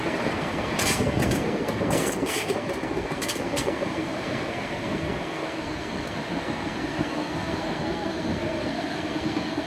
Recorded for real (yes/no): no